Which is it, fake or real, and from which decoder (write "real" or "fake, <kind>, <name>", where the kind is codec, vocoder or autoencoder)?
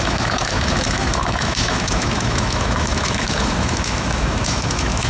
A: fake, autoencoder, DAC-VAE